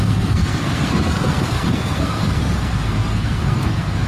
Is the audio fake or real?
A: fake